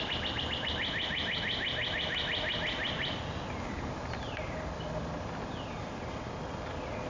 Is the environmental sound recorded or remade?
recorded